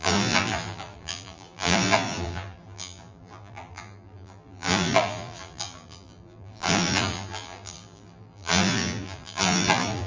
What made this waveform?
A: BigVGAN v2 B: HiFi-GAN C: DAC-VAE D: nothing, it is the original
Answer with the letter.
A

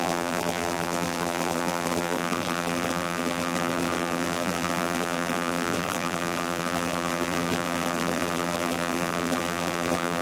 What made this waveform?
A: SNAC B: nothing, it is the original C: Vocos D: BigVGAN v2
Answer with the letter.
D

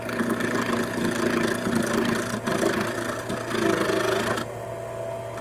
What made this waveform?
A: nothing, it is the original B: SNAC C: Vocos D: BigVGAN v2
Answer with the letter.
A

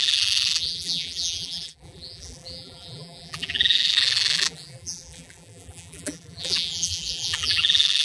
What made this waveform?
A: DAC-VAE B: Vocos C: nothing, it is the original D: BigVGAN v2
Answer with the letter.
D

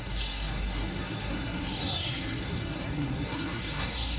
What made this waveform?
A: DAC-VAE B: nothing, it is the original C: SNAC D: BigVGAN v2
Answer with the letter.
C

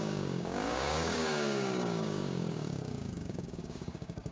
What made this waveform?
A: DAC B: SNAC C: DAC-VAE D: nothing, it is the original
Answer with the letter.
A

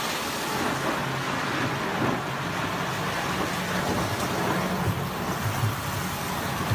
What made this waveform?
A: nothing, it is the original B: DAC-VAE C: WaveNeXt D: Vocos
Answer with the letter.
A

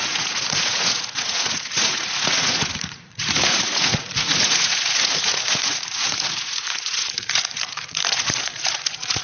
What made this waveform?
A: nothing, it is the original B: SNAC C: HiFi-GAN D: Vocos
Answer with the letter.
D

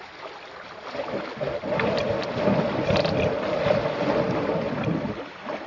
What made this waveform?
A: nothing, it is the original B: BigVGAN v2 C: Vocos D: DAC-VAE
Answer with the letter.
A